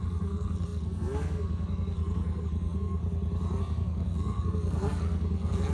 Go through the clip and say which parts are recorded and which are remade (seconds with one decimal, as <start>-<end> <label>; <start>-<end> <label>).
0.0-3.0 remade; 3.0-3.6 recorded; 3.6-5.7 remade

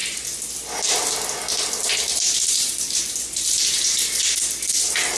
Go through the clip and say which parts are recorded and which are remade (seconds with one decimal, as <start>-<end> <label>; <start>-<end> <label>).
0.0-2.1 recorded; 2.1-4.2 remade; 4.2-5.2 recorded

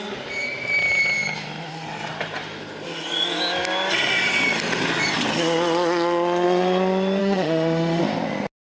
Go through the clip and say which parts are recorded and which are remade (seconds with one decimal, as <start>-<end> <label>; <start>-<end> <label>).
0.0-7.2 recorded; 7.2-8.0 remade; 8.0-8.7 recorded

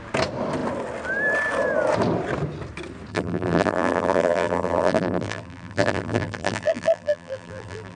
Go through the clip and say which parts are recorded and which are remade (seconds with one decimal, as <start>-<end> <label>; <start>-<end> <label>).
0.0-3.1 recorded; 3.1-8.0 remade

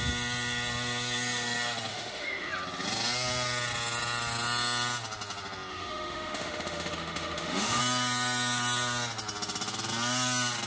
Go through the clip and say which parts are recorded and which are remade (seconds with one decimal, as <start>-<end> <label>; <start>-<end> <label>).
0.0-1.9 recorded; 1.9-2.5 remade; 2.5-5.7 recorded; 5.7-7.8 remade; 7.8-10.7 recorded

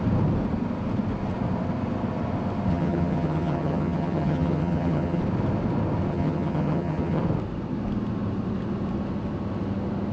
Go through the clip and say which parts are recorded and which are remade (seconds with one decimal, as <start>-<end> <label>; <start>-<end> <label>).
0.0-2.7 recorded; 2.7-5.2 remade; 5.2-6.1 recorded; 6.1-7.2 remade; 7.2-10.1 recorded

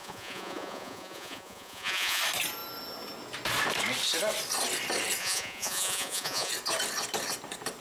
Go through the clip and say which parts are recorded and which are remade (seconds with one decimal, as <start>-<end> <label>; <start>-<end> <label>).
0.0-2.2 remade; 2.2-5.2 recorded; 5.2-6.5 remade; 6.5-7.8 recorded